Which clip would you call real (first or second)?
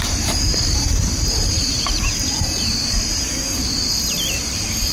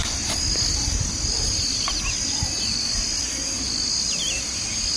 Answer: second